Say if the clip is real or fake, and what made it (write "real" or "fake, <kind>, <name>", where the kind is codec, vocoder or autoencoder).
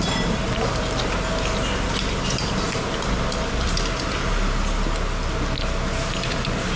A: real